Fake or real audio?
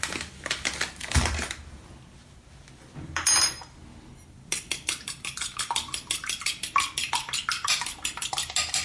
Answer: real